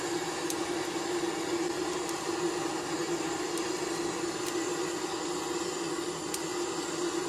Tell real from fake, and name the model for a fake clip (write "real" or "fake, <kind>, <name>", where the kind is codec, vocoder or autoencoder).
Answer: real